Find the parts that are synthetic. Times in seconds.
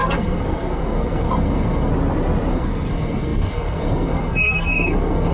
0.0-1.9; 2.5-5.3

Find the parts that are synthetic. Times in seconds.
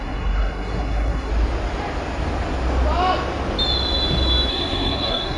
0.0-1.3; 4.5-5.4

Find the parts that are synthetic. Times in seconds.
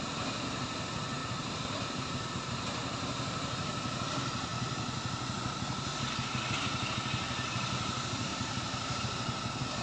1.2-2.3; 8.3-9.0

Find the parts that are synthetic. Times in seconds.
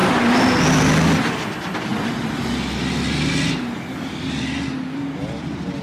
none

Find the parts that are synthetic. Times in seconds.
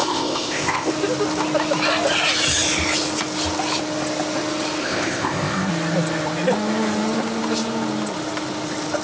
0.0-0.9; 4.8-5.7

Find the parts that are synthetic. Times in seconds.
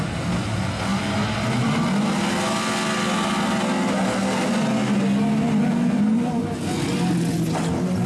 none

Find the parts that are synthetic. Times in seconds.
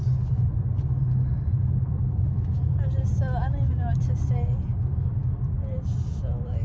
none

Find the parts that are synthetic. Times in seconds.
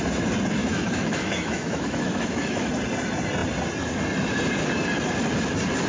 0.6-2.7